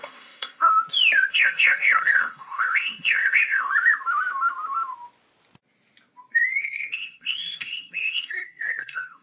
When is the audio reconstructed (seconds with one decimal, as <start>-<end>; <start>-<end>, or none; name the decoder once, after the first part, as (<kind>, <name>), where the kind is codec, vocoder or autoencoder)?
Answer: 0.0-0.7 (codec, SNAC); 1.3-3.7; 6.6-9.2